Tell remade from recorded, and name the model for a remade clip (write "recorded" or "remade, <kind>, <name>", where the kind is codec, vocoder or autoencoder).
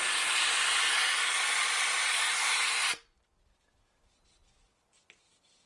recorded